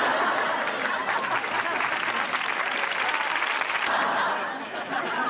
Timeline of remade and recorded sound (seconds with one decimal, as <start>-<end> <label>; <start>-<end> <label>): 0.0-5.3 recorded

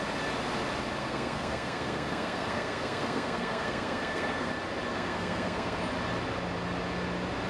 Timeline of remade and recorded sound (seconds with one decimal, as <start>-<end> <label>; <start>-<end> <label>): 0.0-1.0 recorded; 1.0-4.5 remade; 4.5-4.9 recorded; 4.9-5.8 remade; 5.8-7.5 recorded

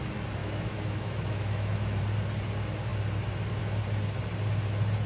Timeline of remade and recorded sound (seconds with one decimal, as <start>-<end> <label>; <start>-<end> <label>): 0.0-0.4 recorded; 0.4-2.0 remade; 2.0-5.1 recorded